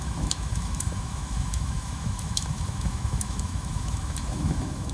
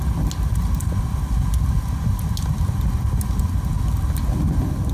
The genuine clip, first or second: second